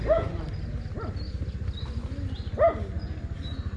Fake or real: real